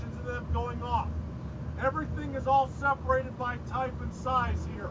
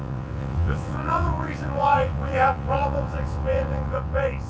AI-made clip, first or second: second